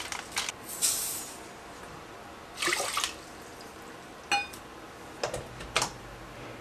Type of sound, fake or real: real